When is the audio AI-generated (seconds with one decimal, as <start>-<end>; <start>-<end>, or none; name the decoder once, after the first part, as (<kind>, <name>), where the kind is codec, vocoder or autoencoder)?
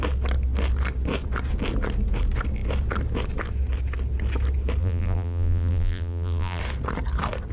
4.8-6.6 (vocoder, BigVGAN v2)